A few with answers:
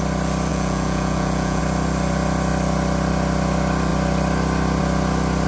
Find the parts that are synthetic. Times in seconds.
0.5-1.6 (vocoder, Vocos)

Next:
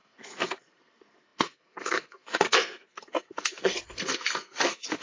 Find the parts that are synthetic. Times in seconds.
0.0-5.0 (codec, SNAC)

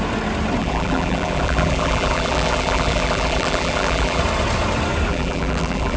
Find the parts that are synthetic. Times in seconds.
0.6-4.2 (vocoder, BigVGAN v2); 5.1-6.0

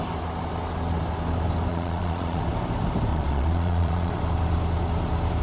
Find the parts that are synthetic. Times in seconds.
1.7-2.4 (vocoder, Vocos); 3.1-4.1

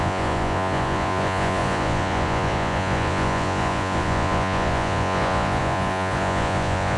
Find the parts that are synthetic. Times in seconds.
0.0-7.0 (vocoder, Vocos)